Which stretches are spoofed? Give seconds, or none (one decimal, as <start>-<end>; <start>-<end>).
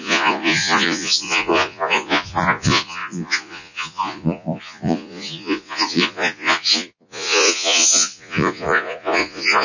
0.0-9.6